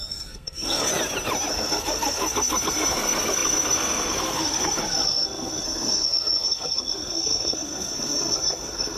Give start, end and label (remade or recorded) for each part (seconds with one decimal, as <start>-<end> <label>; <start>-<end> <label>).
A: 0.0-0.9 remade; 0.9-1.5 recorded; 1.5-9.0 remade

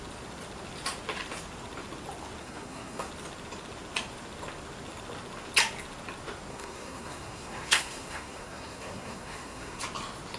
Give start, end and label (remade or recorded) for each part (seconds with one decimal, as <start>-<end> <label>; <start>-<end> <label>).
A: 0.0-2.4 recorded; 2.4-3.1 remade; 3.1-6.5 recorded; 6.5-9.8 remade; 9.8-10.4 recorded

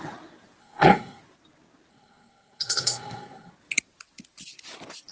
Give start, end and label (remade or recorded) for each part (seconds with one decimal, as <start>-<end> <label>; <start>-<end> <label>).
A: 0.0-0.6 recorded; 0.6-1.2 remade; 1.2-1.9 recorded; 1.9-3.5 remade; 3.5-5.1 recorded

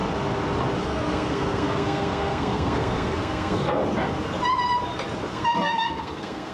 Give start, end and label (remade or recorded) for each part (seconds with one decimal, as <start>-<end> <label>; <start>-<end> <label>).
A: 0.0-0.8 recorded; 0.8-3.8 remade; 3.8-5.3 recorded; 5.3-6.5 remade

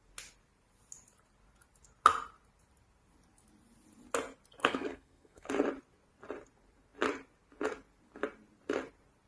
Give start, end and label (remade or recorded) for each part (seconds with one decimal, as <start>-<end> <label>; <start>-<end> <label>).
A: 0.0-4.6 recorded; 4.6-5.5 remade; 5.5-9.3 recorded

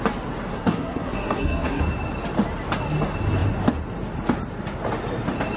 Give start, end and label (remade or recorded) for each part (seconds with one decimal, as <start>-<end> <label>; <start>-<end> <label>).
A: 0.0-0.5 recorded; 0.5-1.8 remade; 1.8-5.6 recorded

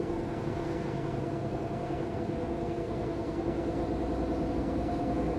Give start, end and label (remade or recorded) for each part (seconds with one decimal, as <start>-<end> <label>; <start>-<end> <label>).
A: 0.0-3.8 remade; 3.8-4.5 recorded; 4.5-5.4 remade